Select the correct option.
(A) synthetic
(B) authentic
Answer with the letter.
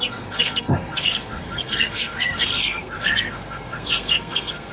A